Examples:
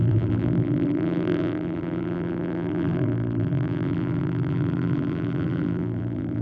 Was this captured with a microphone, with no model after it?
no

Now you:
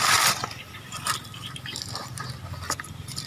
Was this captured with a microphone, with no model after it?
no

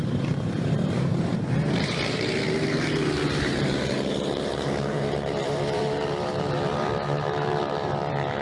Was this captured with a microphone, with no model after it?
no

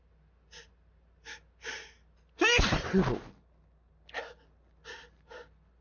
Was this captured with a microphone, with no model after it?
yes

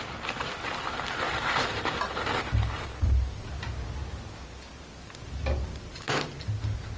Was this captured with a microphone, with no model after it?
yes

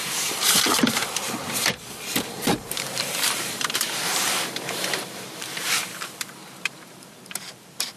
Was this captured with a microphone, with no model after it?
no